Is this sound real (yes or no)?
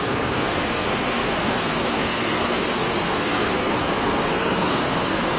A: no